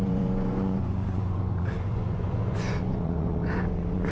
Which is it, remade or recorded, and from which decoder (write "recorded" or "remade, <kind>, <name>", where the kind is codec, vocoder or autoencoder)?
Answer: remade, vocoder, Vocos